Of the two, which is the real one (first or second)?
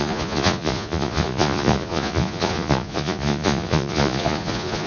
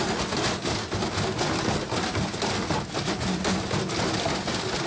second